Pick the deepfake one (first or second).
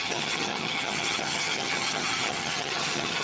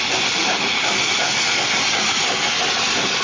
first